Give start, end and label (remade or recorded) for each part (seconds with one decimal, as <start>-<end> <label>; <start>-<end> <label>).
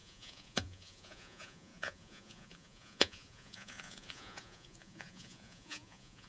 0.0-6.3 remade